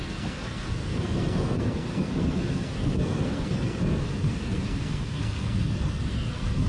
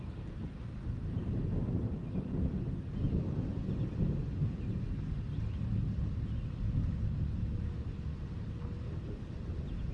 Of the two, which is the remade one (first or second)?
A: first